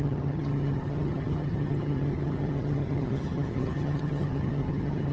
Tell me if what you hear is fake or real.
fake